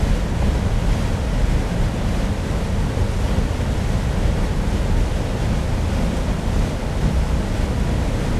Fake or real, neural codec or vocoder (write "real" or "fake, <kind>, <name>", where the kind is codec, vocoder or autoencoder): real